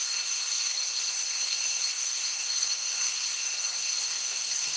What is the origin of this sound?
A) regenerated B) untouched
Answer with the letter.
A